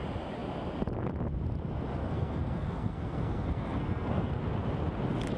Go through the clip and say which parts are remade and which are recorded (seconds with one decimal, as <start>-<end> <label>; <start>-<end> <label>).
0.0-2.0 recorded; 2.0-4.4 remade; 4.4-5.4 recorded